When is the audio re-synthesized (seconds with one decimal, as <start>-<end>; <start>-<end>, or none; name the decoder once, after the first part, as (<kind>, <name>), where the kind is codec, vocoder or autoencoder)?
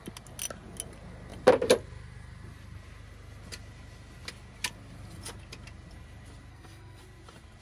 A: 6.5-7.0 (codec, SNAC)